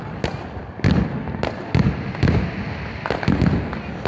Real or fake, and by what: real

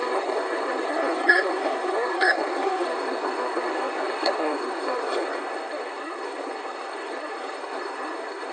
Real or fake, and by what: fake, codec, SNAC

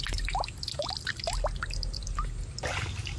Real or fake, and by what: real